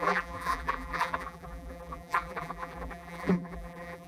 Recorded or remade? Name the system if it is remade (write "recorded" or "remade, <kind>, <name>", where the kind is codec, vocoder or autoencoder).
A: remade, vocoder, BigVGAN v2